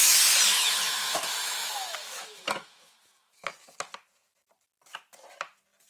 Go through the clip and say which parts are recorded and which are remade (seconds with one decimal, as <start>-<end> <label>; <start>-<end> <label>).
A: 0.0-0.5 recorded; 0.5-3.5 remade; 3.5-5.9 recorded